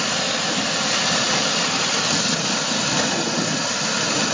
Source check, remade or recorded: recorded